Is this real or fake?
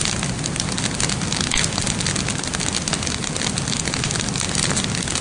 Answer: real